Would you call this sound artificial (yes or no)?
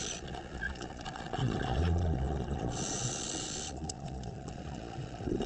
yes